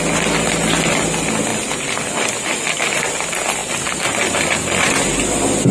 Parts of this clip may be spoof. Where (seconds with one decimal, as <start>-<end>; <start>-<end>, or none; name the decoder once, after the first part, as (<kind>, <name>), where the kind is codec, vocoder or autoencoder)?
1.5-2.3 (vocoder, BigVGAN v2)